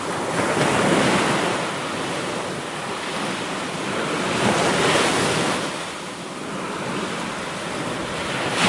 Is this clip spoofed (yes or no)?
no